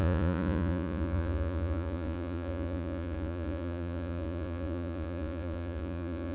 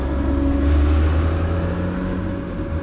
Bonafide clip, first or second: second